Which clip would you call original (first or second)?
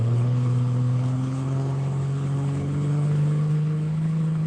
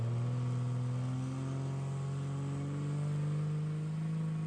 second